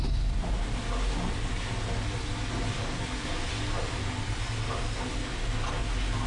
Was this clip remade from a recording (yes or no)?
no